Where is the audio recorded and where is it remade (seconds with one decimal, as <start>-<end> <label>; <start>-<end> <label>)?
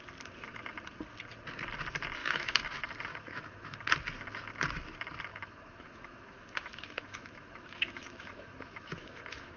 0.0-2.2 recorded; 2.2-2.7 remade; 2.7-3.1 recorded; 3.1-3.8 remade; 3.8-5.3 recorded; 5.3-9.6 remade